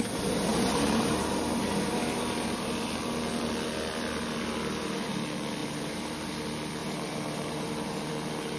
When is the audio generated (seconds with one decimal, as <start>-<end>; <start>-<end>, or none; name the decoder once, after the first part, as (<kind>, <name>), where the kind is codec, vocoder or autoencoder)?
0.5-1.4 (vocoder, BigVGAN v2); 5.6-6.3; 6.8-8.1